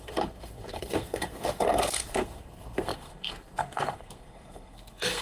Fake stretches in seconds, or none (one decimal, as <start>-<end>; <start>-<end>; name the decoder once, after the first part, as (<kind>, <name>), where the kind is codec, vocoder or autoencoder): 0.0-5.2 (codec, SNAC)